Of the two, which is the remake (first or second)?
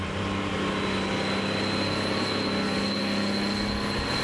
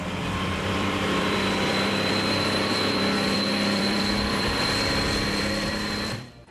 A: second